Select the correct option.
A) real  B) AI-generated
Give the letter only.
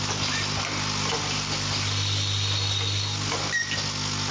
A